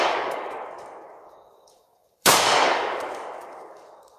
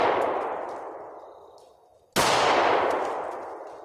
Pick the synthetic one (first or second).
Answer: first